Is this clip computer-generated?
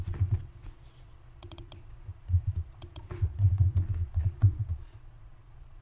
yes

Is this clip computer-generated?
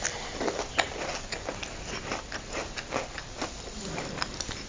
no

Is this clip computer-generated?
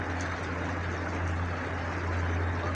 no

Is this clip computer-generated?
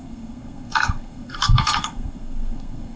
yes